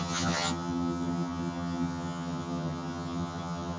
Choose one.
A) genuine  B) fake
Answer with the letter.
B